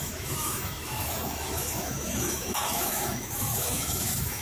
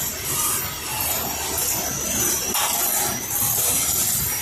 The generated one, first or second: first